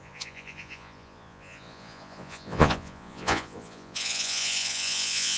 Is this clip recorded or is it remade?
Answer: remade